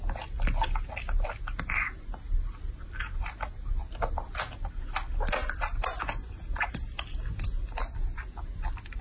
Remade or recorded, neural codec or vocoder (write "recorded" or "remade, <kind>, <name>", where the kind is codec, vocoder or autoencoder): recorded